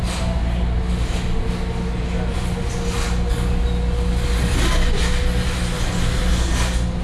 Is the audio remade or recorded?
recorded